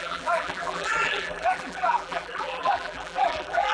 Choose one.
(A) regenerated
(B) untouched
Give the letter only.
A